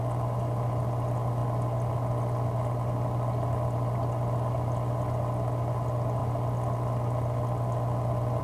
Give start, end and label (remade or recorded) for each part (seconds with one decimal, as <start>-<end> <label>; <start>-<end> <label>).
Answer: 0.0-8.4 recorded